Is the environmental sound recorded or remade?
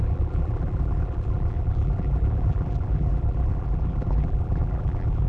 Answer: remade